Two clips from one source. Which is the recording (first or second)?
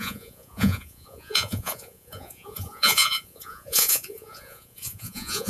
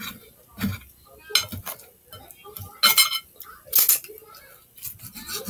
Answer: second